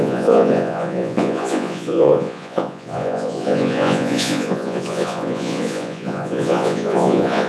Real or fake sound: fake